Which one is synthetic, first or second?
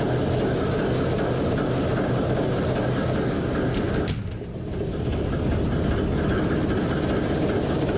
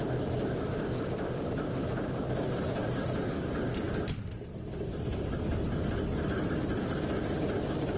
second